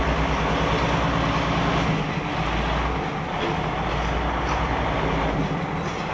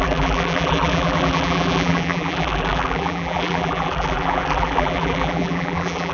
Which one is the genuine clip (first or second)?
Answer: first